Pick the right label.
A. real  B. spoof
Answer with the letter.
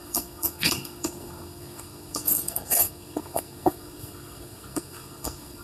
B